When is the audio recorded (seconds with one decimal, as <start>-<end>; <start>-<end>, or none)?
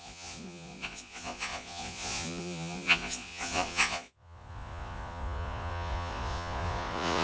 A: none